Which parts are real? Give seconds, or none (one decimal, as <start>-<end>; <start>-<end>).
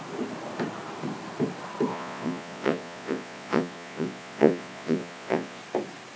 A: 0.0-1.9; 5.6-6.2